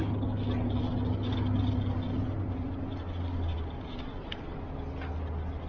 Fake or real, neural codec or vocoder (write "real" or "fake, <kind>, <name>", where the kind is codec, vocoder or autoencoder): real